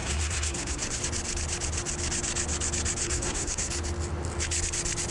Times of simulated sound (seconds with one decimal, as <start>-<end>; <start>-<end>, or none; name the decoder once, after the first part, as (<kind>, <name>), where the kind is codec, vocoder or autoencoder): 0.0-1.0 (codec, SNAC); 3.0-3.7